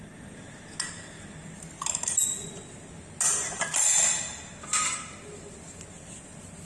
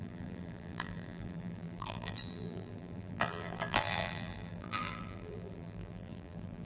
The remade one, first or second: second